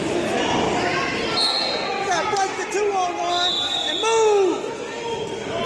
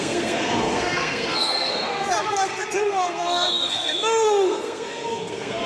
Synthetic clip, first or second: second